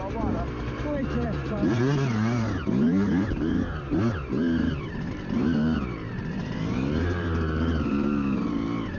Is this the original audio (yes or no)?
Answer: no